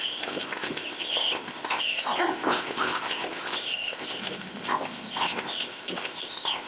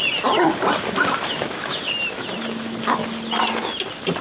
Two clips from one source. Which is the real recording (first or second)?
second